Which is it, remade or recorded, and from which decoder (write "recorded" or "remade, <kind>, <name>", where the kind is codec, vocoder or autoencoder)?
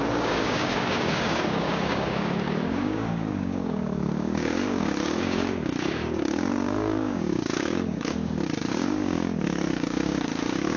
remade, codec, DAC